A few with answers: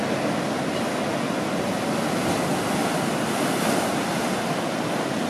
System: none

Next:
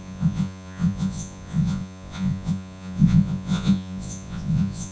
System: vocoder, Vocos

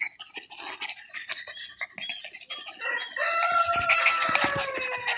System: none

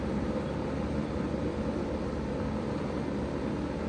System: vocoder, BigVGAN v2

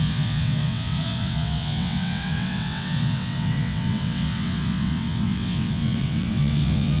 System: vocoder, WaveNeXt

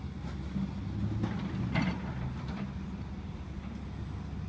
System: none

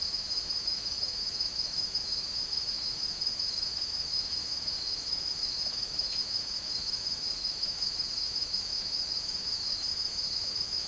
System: autoencoder, DAC-VAE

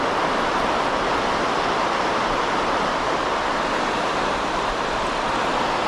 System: none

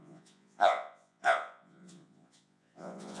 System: vocoder, Vocos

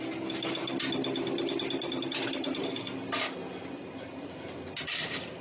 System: none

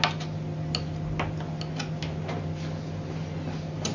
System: none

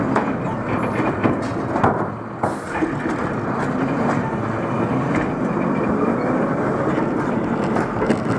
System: none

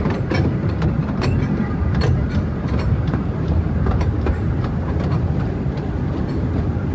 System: vocoder, BigVGAN v2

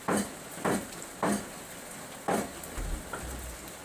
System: none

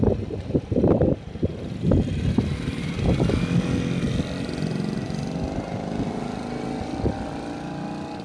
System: none